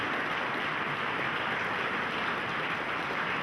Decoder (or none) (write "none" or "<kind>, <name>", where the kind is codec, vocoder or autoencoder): none